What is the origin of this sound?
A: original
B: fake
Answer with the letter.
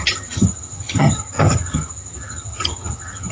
B